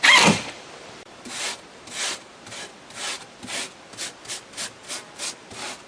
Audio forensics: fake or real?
fake